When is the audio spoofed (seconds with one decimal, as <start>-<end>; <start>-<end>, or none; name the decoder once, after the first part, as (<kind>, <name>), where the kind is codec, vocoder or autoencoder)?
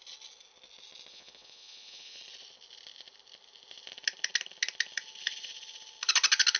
1.1-2.2 (vocoder, Vocos)